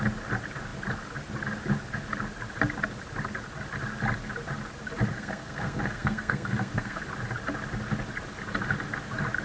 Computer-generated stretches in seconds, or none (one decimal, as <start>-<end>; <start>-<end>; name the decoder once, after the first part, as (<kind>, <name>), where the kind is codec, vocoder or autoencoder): 5.1-7.0 (codec, SNAC)